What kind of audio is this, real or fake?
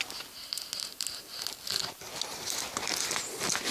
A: real